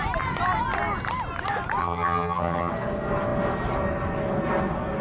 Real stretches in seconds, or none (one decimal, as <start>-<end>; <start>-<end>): 0.0-1.8; 2.7-5.0